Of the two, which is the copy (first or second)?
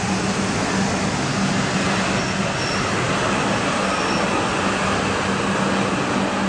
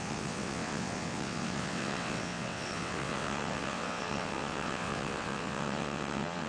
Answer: second